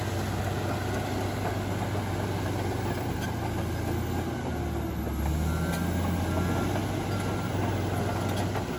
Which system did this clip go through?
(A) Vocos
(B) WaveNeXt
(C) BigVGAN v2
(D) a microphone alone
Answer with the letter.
D